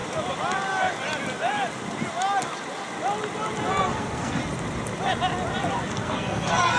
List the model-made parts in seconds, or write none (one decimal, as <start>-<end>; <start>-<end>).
3.7-4.4; 5.8-6.8